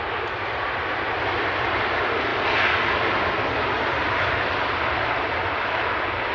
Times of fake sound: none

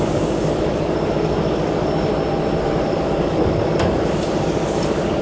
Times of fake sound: 0.0-2.1 (codec, DAC); 2.6-5.2

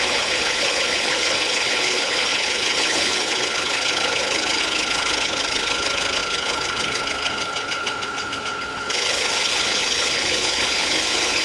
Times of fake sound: 0.0-11.4 (codec, HILCodec)

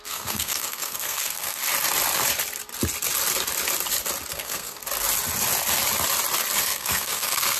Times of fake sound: 0.0-1.6 (codec, SNAC); 4.3-4.8; 6.6-7.6

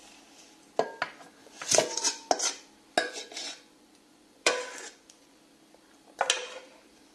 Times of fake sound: 1.4-2.3 (vocoder, Vocos); 3.0-5.4